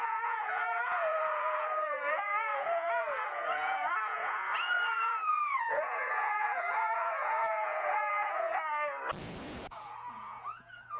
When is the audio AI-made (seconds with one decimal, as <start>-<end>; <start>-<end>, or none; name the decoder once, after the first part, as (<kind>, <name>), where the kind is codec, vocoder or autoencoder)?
0.0-8.5 (vocoder, Vocos); 9.2-11.0